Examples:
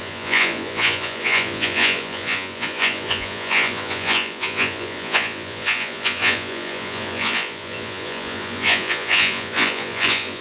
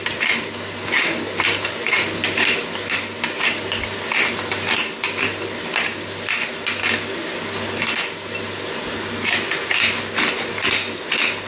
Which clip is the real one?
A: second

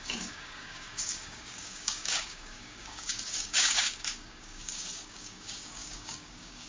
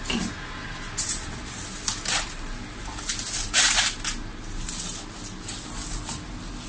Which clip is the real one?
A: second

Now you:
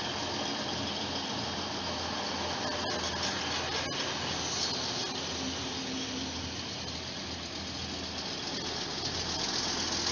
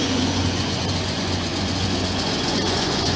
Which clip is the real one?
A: first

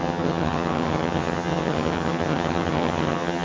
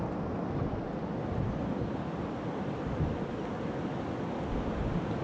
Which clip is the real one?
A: second